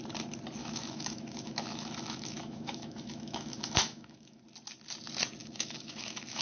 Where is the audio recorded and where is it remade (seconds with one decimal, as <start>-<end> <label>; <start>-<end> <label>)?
0.0-0.6 recorded; 0.6-4.4 remade; 4.4-5.4 recorded; 5.4-6.4 remade